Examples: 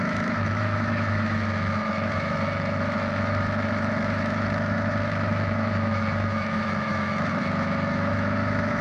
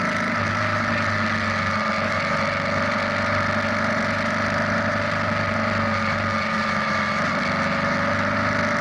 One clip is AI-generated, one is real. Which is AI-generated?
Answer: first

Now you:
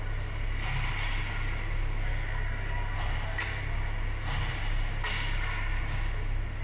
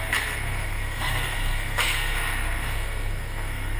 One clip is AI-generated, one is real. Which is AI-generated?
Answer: second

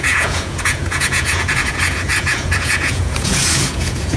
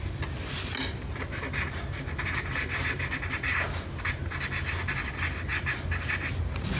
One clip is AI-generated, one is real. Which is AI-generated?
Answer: first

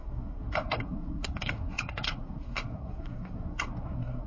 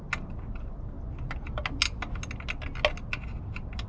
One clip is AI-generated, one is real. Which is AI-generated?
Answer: first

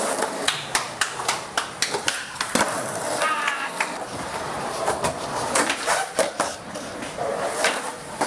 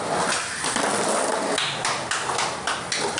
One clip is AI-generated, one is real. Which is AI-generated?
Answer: first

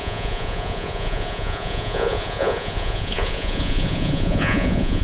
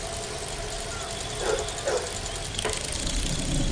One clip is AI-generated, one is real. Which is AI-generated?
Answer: first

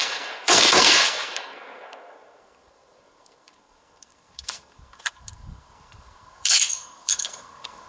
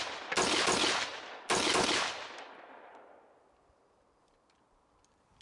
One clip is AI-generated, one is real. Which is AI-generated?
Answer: first